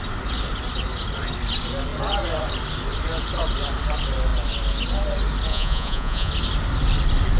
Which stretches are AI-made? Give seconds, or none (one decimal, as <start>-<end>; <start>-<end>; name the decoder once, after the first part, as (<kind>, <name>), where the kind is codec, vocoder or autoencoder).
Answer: 5.5-6.3 (vocoder, Vocos)